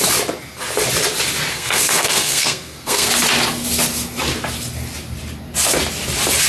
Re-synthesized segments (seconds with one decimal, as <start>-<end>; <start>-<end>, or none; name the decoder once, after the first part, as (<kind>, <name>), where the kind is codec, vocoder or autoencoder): 1.5-3.1 (codec, SNAC)